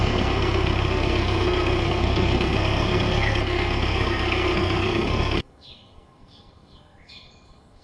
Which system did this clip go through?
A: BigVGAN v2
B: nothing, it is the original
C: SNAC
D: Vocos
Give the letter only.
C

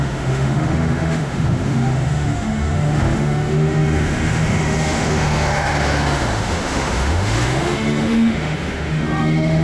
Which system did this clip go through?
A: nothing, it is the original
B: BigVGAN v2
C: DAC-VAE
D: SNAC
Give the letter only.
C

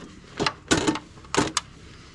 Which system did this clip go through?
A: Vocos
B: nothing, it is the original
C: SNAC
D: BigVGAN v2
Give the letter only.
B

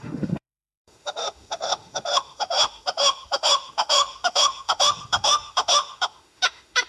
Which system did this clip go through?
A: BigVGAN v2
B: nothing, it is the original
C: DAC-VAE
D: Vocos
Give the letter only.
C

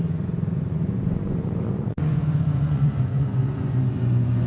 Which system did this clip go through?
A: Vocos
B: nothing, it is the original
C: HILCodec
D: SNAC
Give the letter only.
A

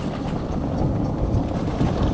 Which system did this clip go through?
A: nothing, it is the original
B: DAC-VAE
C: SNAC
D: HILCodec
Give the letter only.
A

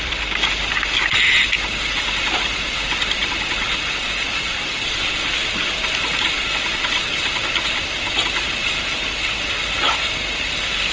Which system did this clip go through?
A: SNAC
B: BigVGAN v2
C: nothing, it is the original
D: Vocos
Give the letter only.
C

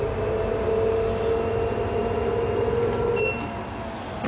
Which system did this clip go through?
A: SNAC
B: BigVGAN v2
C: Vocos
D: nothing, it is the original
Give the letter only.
D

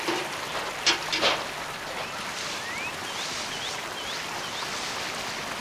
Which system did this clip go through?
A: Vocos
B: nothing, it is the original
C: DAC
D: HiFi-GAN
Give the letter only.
B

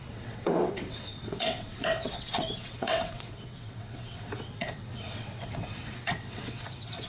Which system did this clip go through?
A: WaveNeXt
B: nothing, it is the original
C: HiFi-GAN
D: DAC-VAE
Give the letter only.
A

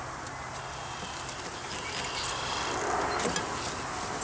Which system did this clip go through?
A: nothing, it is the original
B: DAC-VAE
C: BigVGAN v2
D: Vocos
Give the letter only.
A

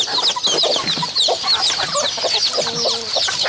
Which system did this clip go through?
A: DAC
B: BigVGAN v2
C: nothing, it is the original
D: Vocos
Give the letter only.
C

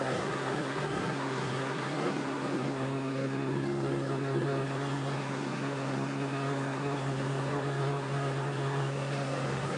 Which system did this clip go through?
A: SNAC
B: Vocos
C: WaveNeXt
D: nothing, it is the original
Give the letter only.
A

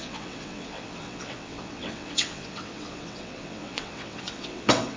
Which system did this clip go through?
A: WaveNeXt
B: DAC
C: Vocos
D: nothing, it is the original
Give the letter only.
A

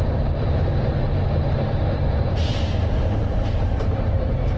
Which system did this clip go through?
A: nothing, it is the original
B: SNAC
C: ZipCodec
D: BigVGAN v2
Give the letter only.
D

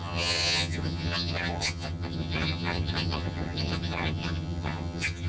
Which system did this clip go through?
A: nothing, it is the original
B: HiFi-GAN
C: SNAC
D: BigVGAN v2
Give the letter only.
B